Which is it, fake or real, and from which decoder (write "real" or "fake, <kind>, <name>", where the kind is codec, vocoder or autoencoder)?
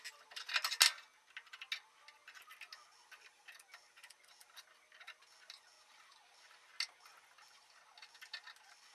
real